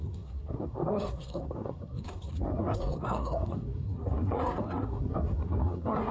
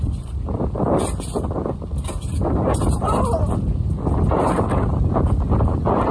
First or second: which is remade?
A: first